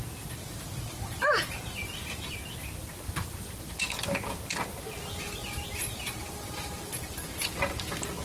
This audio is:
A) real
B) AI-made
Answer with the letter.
A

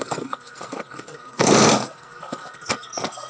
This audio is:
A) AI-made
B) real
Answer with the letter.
A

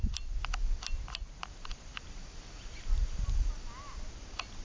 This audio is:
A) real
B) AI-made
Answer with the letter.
A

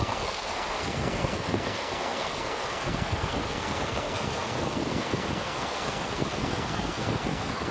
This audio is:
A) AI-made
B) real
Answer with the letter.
A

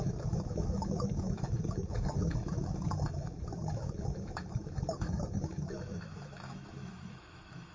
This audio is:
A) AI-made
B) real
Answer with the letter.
A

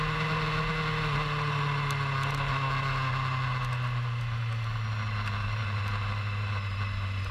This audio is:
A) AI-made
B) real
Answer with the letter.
B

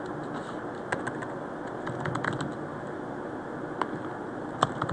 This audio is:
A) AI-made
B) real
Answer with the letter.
B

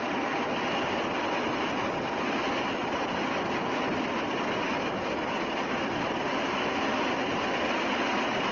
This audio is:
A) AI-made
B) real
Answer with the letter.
B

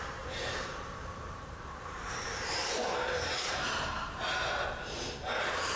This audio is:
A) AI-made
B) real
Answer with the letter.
A